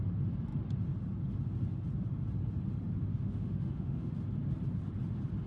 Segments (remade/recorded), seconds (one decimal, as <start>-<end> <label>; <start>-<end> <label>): 0.0-3.1 recorded; 3.1-4.1 remade; 4.1-5.5 recorded